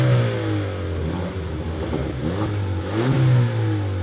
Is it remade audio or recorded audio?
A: recorded